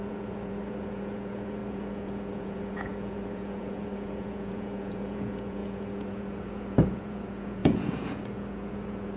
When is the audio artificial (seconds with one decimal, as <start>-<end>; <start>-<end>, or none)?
0.0-9.2